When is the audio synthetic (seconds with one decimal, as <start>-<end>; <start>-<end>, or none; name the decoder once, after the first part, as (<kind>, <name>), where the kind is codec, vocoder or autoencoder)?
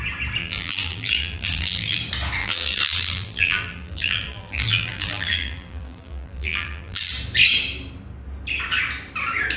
0.4-2.0 (vocoder, BigVGAN v2); 2.4-7.1